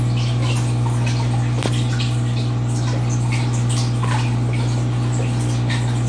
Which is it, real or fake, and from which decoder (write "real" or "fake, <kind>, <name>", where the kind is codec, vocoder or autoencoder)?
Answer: real